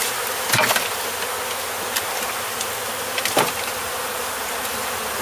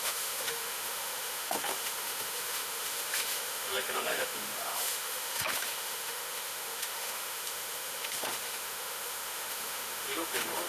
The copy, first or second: second